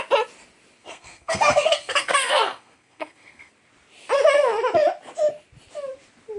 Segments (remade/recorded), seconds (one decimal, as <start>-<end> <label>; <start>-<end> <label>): 0.0-0.8 recorded; 0.8-3.5 remade; 3.5-6.4 recorded